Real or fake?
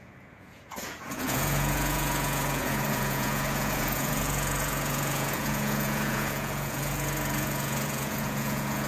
fake